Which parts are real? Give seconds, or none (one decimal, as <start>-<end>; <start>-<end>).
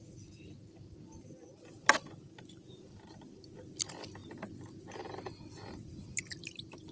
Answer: 4.2-6.4